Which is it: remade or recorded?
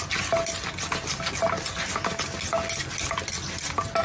recorded